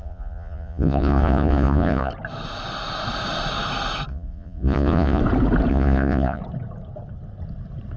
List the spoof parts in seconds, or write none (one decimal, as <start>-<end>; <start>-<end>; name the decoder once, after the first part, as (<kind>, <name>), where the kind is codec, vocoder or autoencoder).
0.0-2.1 (vocoder, Vocos); 4.1-5.2; 5.7-6.4